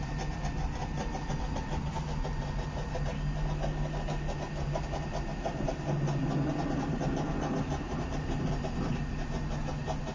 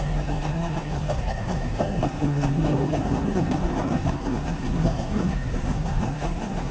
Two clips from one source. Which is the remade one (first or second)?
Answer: second